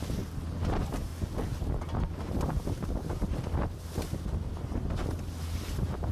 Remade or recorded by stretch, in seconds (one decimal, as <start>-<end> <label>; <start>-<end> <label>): 0.0-6.1 recorded